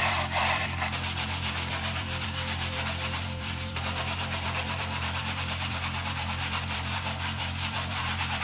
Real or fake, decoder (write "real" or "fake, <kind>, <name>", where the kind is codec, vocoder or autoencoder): fake, vocoder, BigVGAN v2